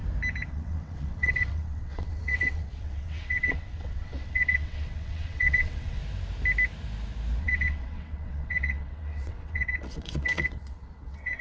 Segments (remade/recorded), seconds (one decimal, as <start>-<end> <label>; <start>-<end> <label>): 0.0-0.5 recorded; 0.5-6.0 remade; 6.0-7.4 recorded; 7.4-11.4 remade